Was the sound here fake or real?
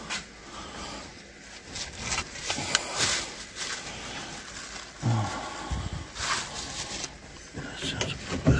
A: real